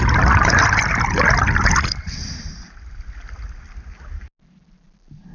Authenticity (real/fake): real